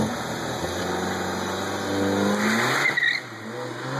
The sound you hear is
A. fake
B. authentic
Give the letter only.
B